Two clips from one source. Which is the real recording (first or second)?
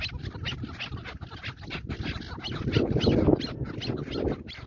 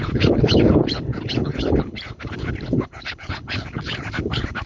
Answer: first